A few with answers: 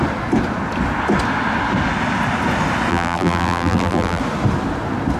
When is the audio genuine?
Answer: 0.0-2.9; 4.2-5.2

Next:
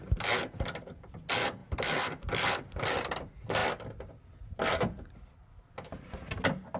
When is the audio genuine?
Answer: 0.0-6.8

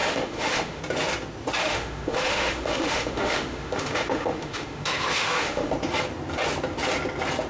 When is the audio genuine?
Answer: 0.8-1.6; 5.7-7.5

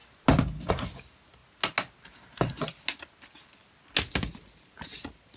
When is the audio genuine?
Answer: 0.0-5.4